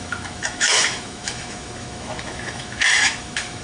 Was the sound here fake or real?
fake